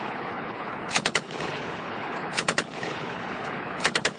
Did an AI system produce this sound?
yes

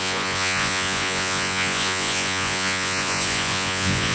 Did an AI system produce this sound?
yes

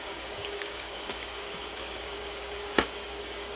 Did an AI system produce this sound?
yes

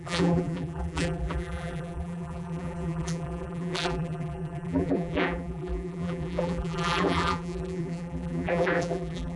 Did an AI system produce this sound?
yes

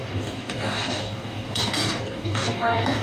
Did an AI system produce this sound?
yes